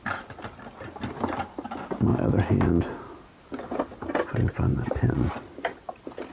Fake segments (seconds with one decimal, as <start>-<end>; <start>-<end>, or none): 4.7-5.3